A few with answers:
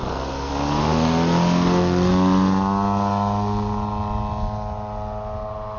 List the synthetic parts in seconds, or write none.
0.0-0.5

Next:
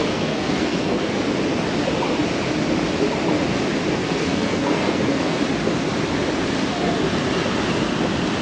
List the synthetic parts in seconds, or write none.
0.0-1.2; 4.0-5.4